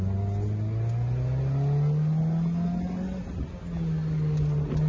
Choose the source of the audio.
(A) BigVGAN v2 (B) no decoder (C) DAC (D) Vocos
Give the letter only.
B